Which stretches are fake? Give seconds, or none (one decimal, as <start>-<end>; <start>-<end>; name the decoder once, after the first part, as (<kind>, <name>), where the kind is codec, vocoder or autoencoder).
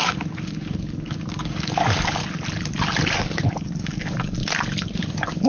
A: 0.0-2.2 (codec, DAC); 3.2-4.4; 5.1-5.5